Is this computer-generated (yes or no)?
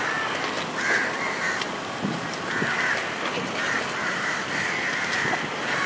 no